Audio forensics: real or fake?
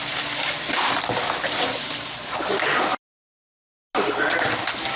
real